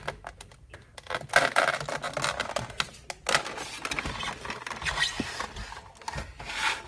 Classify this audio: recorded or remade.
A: recorded